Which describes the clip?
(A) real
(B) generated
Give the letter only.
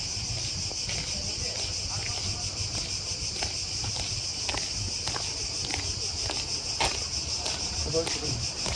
A